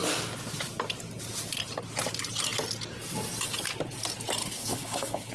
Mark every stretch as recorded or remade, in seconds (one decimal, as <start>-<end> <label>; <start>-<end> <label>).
0.0-4.4 recorded; 4.4-5.3 remade